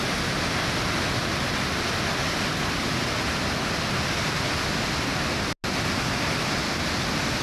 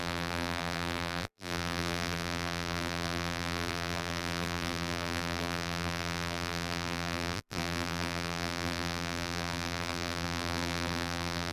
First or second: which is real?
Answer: first